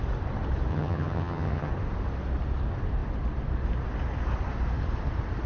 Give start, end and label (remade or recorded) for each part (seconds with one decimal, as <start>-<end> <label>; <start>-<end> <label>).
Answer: 0.0-0.7 recorded; 0.7-1.7 remade; 1.7-5.5 recorded